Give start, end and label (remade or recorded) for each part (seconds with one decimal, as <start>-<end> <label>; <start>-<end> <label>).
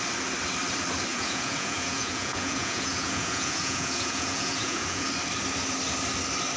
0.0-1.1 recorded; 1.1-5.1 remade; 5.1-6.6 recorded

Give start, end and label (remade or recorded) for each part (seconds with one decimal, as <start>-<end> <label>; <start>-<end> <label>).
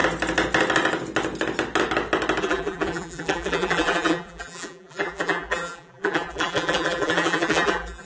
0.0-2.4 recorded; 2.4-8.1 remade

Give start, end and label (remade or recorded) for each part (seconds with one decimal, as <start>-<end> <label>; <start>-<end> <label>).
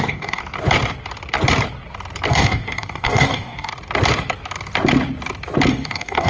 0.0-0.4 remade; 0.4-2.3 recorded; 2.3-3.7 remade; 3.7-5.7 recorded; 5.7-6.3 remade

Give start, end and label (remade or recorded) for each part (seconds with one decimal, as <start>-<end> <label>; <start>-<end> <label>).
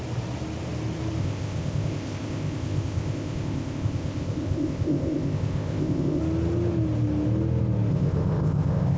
0.0-1.2 recorded; 1.2-6.2 remade; 6.2-7.9 recorded; 7.9-9.0 remade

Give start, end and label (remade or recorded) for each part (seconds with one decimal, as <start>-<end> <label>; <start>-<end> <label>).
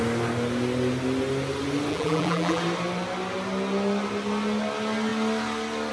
0.0-1.9 recorded; 1.9-2.6 remade; 2.6-5.9 recorded